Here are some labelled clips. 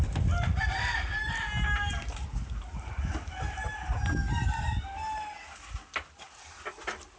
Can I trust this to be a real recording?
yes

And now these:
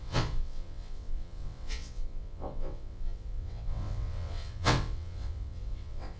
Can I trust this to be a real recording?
no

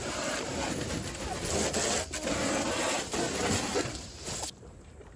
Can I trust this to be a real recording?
yes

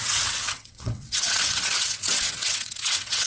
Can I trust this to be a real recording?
no